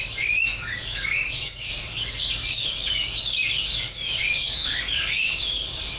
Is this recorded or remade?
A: remade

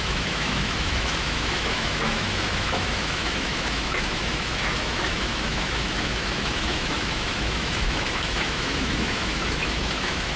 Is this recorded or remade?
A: remade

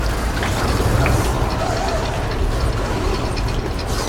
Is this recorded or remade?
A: recorded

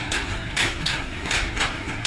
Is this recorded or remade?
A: remade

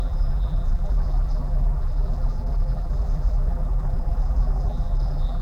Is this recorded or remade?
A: remade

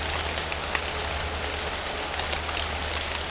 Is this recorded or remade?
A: recorded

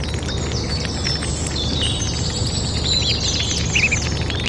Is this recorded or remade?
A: recorded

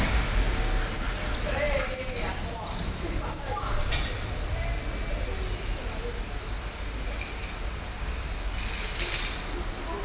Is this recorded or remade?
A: recorded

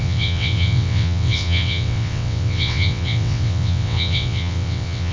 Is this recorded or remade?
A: remade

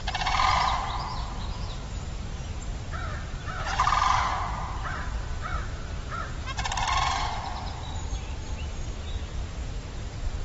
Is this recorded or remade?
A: recorded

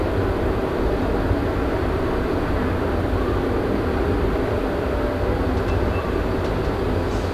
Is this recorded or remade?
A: recorded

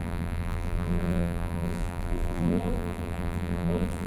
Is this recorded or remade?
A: remade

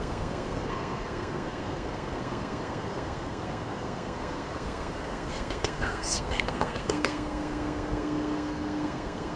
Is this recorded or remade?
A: remade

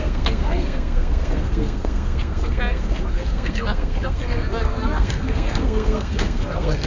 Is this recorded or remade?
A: remade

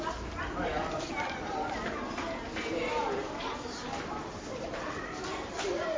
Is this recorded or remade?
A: recorded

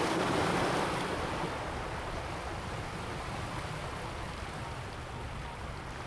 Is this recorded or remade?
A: recorded